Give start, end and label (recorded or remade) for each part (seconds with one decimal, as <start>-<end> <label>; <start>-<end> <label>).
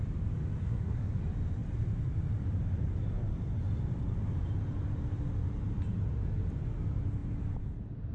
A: 0.0-0.6 recorded; 0.6-1.2 remade; 1.2-8.1 recorded